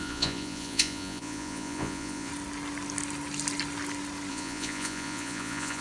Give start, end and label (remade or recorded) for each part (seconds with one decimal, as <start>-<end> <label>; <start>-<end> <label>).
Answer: 0.0-2.3 remade; 2.3-4.3 recorded; 4.3-5.8 remade